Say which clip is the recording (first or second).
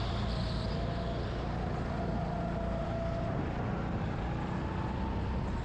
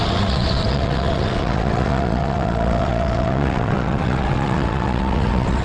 first